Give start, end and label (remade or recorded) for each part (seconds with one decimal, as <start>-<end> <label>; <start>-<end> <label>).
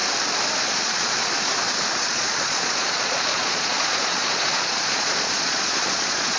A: 0.0-0.6 recorded; 0.6-1.2 remade; 1.2-2.0 recorded; 2.0-6.4 remade